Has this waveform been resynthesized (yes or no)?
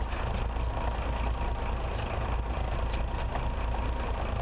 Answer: no